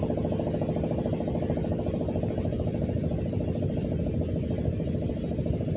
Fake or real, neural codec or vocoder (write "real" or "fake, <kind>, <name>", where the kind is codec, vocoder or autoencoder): real